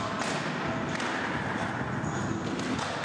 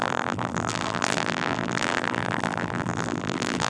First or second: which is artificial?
second